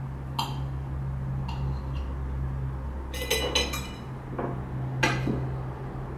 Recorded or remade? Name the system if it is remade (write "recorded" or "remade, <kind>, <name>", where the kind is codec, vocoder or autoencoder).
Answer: recorded